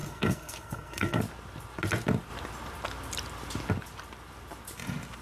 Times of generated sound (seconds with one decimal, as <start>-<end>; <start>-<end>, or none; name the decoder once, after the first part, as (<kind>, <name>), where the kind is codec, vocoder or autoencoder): 0.0-1.2 (codec, SNAC)